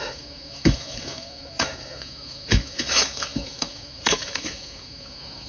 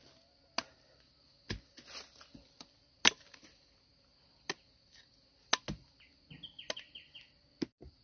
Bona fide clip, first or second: second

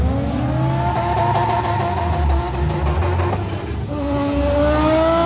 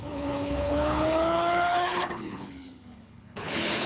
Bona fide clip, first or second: first